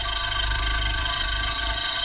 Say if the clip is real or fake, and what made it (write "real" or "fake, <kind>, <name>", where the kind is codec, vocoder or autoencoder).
fake, vocoder, BigVGAN v2